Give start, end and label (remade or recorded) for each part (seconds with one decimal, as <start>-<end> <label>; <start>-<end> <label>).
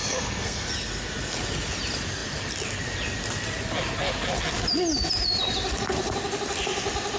0.0-0.7 remade; 0.7-7.2 recorded